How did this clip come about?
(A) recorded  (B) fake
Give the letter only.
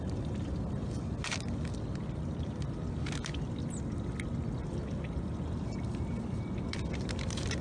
A